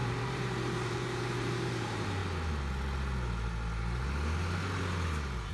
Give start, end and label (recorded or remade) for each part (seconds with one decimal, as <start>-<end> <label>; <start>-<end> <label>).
0.0-2.2 remade; 2.2-5.5 recorded